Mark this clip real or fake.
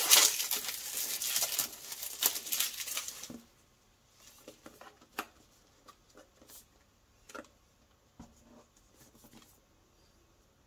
real